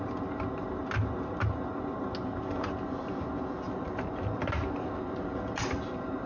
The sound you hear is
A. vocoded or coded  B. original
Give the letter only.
B